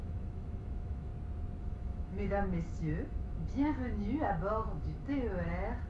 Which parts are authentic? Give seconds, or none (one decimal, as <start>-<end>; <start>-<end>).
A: 1.1-1.6